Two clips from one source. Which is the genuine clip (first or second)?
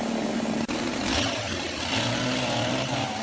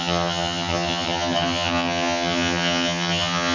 first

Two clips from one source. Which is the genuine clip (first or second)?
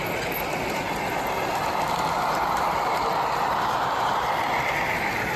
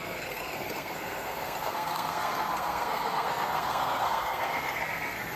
first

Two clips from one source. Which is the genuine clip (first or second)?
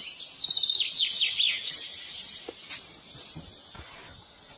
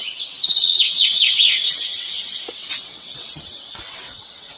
first